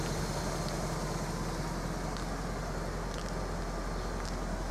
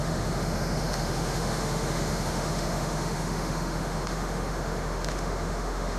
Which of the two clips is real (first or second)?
first